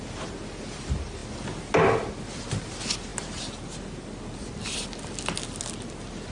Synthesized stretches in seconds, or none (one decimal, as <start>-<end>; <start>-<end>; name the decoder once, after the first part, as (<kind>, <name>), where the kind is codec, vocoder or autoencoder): none